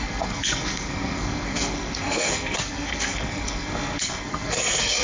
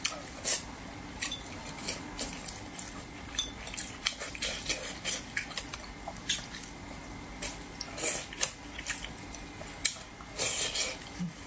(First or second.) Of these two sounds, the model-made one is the first